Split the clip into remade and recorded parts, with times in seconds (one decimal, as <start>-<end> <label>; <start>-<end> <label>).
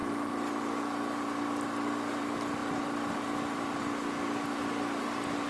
0.0-5.5 recorded